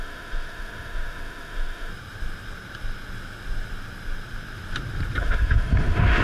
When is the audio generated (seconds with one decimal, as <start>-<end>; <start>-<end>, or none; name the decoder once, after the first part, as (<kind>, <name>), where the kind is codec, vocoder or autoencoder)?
0.0-1.9 (autoencoder, DAC-VAE); 5.2-6.2